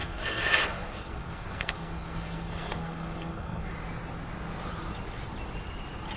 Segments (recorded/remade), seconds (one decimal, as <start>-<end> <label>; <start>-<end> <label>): 0.0-3.7 remade; 3.7-6.2 recorded